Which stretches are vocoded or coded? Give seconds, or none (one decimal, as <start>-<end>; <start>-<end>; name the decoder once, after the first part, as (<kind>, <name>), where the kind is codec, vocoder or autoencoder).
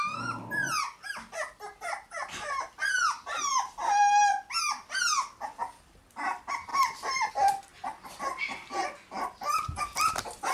6.7-7.3 (vocoder, BigVGAN v2)